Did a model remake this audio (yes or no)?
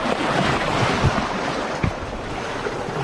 no